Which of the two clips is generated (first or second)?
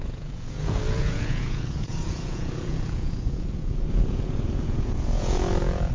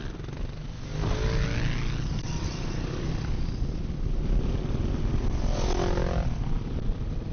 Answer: first